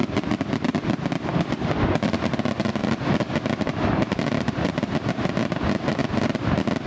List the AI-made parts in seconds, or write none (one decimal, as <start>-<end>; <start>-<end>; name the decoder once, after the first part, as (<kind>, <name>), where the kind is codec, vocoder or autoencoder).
none